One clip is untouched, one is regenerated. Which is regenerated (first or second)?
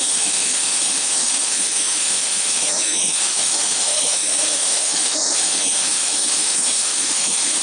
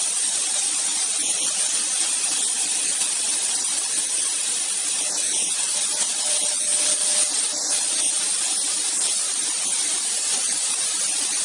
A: first